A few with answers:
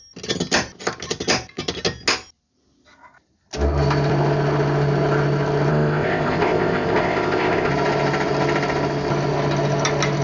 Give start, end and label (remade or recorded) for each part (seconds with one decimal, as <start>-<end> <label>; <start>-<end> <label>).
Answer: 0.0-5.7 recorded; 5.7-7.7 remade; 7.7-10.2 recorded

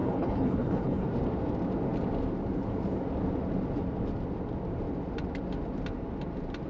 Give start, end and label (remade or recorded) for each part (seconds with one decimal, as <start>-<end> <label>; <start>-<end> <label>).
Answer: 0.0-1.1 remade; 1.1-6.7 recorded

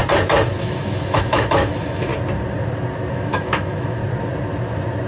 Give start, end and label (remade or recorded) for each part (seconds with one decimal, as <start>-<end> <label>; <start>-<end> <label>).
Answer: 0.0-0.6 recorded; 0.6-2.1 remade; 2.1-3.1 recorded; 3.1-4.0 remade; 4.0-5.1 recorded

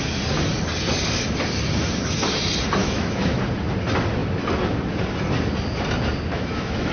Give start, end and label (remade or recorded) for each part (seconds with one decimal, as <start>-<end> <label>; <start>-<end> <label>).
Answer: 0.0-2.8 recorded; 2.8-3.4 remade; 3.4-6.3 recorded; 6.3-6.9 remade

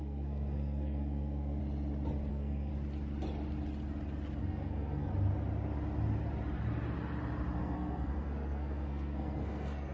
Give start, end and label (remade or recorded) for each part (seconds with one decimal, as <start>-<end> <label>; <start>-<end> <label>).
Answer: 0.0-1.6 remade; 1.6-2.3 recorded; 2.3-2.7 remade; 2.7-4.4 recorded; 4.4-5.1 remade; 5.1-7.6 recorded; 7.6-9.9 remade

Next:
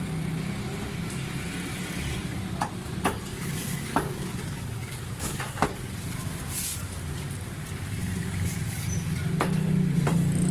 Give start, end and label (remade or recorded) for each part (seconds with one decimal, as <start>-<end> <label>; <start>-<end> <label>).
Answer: 0.0-3.3 recorded; 3.3-5.4 remade; 5.4-10.5 recorded